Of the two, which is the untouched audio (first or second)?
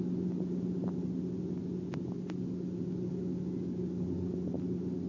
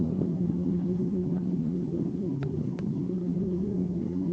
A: first